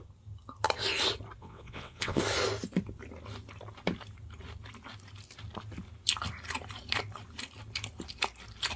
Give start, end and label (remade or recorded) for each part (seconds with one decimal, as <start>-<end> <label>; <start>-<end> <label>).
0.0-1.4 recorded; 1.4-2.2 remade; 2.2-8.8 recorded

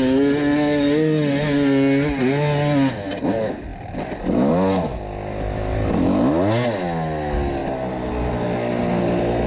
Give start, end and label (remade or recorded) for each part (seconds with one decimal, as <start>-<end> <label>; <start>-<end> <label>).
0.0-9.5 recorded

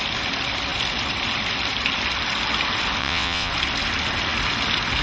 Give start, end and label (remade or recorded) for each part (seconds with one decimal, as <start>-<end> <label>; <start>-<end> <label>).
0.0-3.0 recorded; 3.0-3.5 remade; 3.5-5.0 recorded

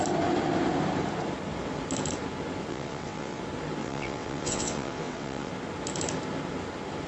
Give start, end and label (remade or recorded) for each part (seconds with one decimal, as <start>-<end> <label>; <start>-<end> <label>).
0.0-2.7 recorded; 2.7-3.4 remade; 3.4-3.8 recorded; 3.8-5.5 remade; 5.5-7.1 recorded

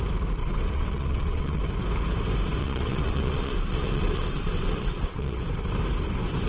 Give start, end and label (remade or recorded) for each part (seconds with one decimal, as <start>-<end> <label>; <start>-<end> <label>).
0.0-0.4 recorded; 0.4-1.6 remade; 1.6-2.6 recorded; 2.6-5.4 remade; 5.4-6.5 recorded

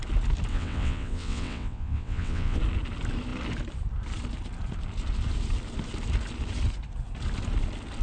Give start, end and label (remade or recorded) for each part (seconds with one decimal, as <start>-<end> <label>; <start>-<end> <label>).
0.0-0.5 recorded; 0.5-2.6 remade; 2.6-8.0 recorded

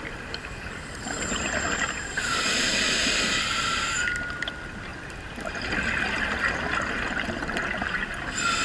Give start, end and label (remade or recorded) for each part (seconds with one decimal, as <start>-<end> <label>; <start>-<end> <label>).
0.0-8.6 recorded